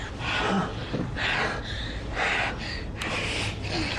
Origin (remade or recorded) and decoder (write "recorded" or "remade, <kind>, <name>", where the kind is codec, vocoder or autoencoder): recorded